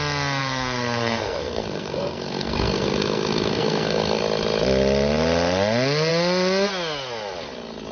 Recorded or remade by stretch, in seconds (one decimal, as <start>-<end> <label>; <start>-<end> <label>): 0.0-0.4 recorded; 0.4-4.2 remade; 4.2-7.9 recorded